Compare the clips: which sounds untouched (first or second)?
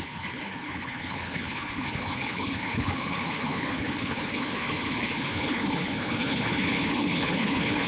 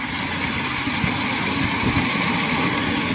second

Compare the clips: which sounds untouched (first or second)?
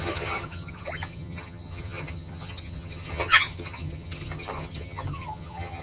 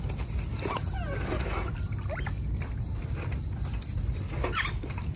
second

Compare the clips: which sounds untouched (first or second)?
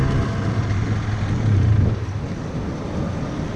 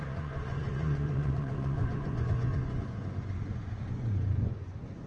first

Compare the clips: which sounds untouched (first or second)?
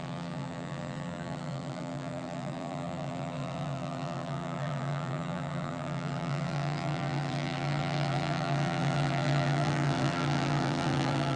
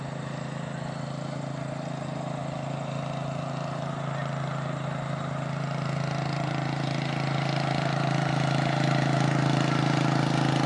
second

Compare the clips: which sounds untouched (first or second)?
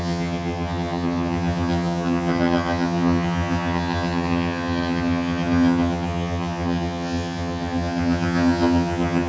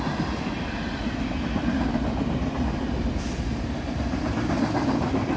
second